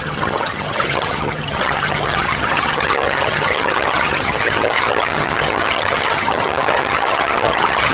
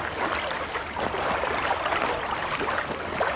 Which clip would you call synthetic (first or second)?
first